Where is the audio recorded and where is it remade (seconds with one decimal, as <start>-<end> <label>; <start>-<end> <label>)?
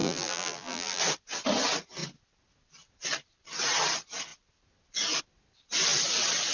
0.0-1.0 remade; 1.0-6.5 recorded